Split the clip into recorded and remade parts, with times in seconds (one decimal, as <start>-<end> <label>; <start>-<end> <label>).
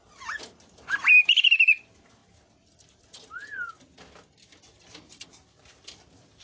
0.0-6.4 recorded